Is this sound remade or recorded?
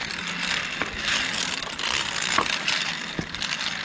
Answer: recorded